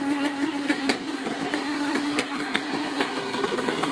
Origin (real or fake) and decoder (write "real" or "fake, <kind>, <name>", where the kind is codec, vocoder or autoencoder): fake, codec, SNAC